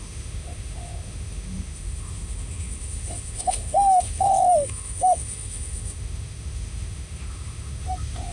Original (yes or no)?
no